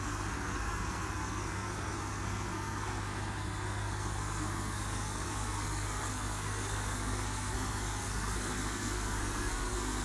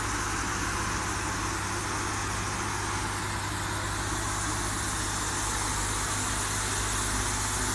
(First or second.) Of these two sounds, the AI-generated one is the first